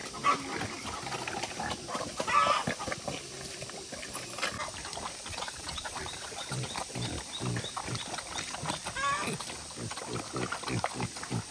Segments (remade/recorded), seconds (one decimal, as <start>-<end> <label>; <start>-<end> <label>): 0.0-5.3 recorded; 5.3-6.5 remade; 6.5-11.5 recorded